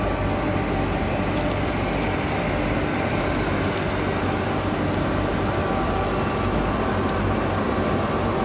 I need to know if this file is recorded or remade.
recorded